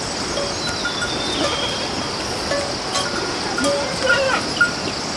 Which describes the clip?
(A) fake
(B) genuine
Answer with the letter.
B